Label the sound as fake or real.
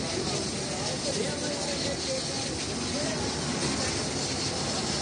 real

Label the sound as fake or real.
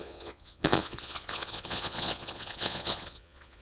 fake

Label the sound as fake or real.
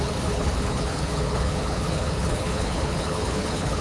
fake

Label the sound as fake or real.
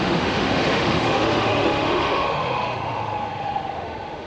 fake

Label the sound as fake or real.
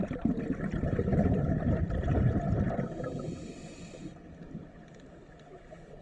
real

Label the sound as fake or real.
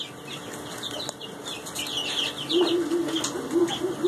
real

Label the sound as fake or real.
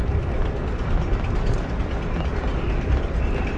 real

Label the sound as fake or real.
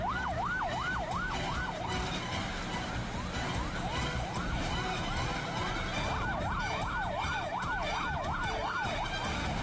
real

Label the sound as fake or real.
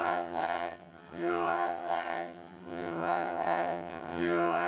fake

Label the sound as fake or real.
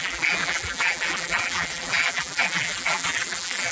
fake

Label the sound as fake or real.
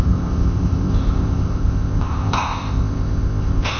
fake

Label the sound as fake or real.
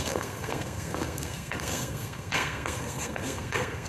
fake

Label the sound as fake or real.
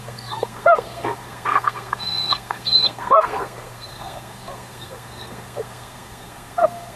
fake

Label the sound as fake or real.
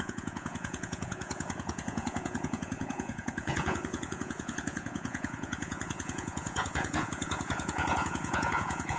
fake